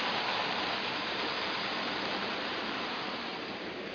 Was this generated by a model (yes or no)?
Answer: yes